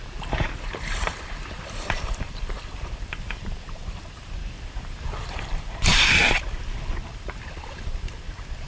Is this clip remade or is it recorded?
remade